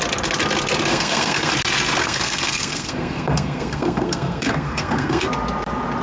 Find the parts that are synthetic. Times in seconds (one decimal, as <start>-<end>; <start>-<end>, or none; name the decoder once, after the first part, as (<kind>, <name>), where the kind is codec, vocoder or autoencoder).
0.9-1.5 (codec, SNAC); 2.0-5.2